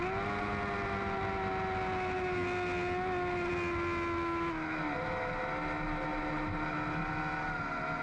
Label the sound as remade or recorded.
recorded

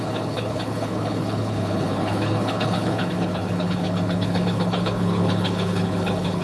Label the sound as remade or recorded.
remade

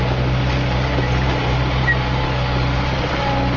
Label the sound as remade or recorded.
recorded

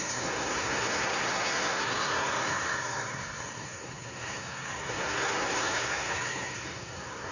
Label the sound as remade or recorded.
remade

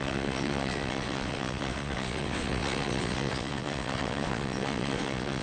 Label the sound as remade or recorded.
remade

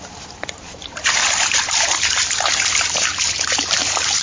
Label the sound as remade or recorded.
remade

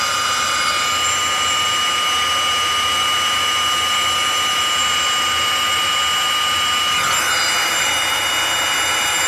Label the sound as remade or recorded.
remade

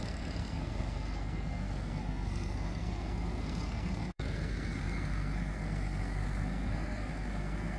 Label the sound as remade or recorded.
remade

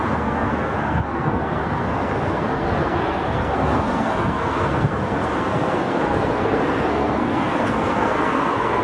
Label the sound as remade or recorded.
remade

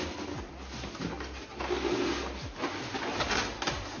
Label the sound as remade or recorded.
recorded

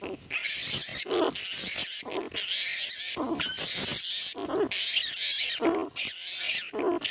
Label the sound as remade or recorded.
recorded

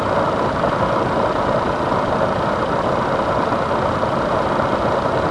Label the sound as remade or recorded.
recorded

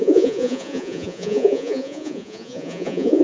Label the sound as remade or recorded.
remade